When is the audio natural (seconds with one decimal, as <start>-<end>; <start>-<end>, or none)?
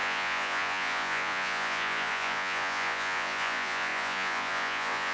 none